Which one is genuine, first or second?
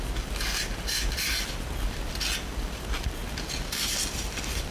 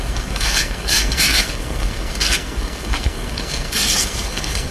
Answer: first